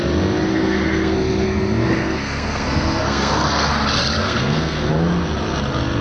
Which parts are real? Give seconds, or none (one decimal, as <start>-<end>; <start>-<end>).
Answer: 0.0-0.5; 3.7-4.2; 4.9-6.0